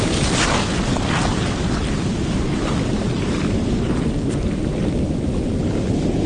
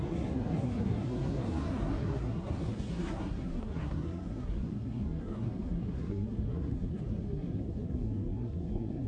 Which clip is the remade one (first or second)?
second